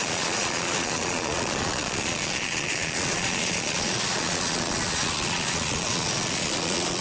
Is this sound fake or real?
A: fake